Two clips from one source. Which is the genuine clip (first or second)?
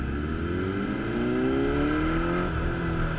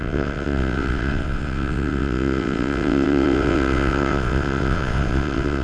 first